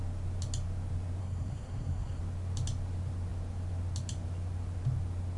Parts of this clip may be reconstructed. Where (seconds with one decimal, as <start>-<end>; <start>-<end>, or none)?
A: 1.2-2.2